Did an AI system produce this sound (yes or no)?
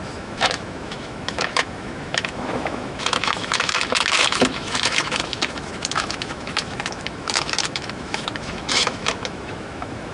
yes